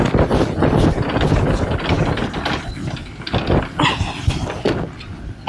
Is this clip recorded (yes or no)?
yes